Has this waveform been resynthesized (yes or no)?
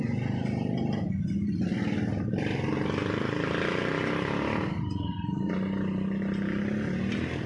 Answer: no